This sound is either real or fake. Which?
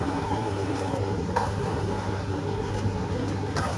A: fake